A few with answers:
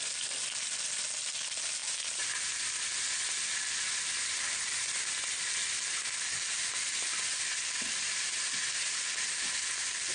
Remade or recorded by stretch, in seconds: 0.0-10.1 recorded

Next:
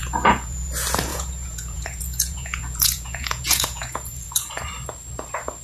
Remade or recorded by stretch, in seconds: 0.0-0.7 remade; 0.7-1.1 recorded; 1.1-4.5 remade; 4.5-5.6 recorded